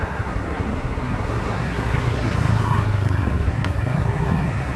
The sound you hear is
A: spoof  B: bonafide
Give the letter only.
A